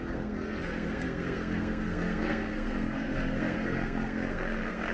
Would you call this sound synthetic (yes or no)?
yes